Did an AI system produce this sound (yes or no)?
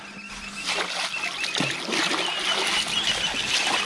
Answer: no